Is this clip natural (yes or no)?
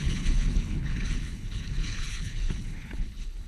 no